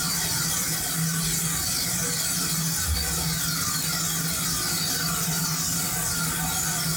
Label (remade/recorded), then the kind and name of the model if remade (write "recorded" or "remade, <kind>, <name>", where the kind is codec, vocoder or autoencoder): recorded